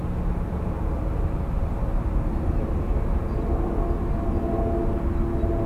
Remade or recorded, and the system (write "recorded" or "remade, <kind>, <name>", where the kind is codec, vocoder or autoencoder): recorded